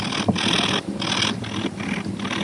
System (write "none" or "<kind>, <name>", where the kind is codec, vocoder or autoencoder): none